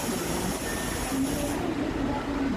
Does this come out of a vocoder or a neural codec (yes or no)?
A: no